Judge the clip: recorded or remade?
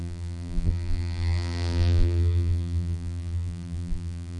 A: remade